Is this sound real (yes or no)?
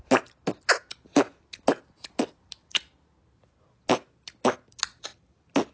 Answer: yes